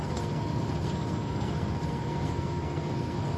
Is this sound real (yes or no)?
no